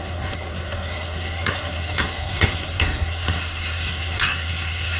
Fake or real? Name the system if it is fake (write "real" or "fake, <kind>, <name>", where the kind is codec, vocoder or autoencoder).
fake, codec, SNAC